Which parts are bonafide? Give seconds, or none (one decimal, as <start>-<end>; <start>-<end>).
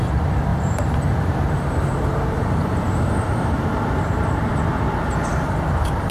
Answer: 0.0-0.5; 4.2-5.3